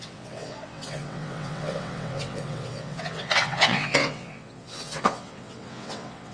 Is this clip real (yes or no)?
no